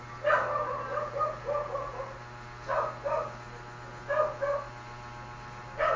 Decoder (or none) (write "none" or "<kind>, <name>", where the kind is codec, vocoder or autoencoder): none